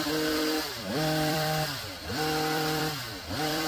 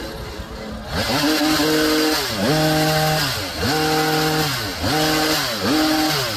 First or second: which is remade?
first